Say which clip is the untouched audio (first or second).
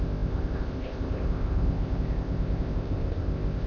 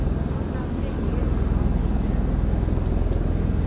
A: second